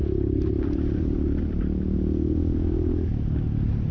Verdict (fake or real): real